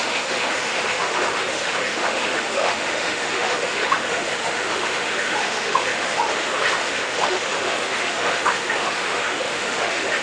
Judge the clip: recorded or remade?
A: remade